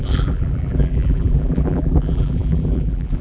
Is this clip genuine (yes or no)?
no